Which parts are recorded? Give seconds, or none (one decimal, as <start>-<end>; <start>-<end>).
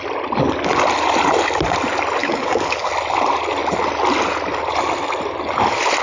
0.0-2.2; 2.9-6.0